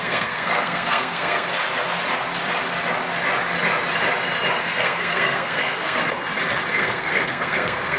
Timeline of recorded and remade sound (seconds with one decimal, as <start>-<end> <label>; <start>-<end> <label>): 0.0-1.5 remade; 1.5-4.6 recorded; 4.6-6.0 remade; 6.0-6.7 recorded; 6.7-8.0 remade